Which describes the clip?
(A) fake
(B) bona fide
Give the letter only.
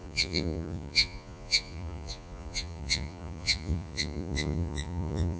A